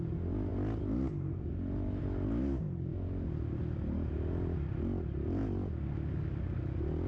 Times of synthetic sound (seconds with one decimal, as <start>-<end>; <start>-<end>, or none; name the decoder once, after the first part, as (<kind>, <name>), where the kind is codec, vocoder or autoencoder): none